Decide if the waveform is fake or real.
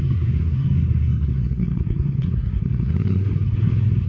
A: fake